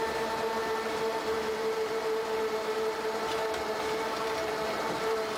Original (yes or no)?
yes